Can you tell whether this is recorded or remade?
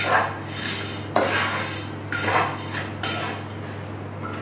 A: recorded